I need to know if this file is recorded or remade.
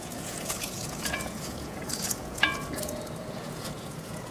remade